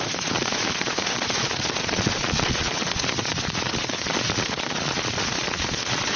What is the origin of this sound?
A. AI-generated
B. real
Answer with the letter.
A